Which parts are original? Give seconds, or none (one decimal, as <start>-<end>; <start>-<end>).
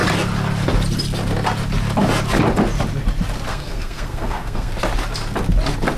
0.0-3.5; 4.7-6.0